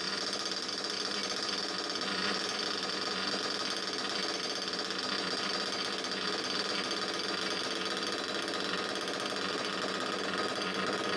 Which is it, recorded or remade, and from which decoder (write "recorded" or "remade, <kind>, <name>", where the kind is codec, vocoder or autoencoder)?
recorded